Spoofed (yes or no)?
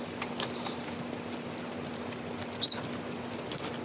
no